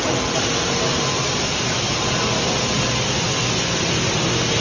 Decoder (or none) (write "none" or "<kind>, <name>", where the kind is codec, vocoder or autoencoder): none